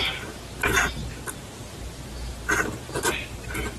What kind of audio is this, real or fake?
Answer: real